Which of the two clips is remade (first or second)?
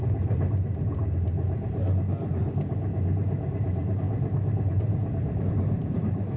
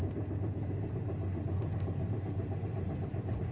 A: first